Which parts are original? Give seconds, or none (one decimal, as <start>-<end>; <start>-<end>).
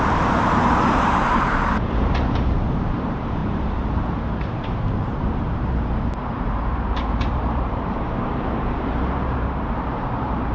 none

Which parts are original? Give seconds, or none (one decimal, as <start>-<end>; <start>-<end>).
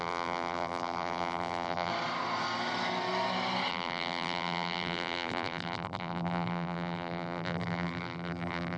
1.9-3.7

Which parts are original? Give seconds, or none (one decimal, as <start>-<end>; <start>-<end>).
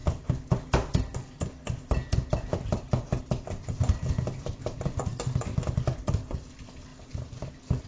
0.0-3.7; 5.5-6.1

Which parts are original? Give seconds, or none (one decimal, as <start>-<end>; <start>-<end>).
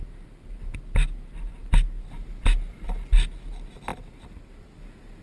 0.0-5.2